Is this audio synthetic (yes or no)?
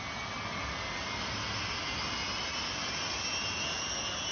no